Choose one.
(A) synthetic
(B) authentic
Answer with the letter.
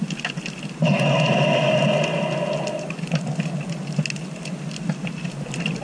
B